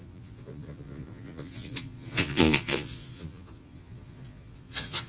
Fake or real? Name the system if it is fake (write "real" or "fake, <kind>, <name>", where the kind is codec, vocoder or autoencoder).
fake, vocoder, Vocos